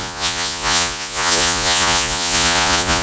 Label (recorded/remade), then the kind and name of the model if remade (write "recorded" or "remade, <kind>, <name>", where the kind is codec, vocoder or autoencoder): remade, vocoder, Vocos